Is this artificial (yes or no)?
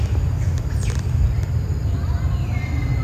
no